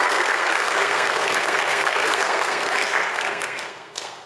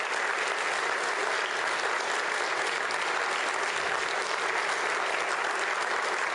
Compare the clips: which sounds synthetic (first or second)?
first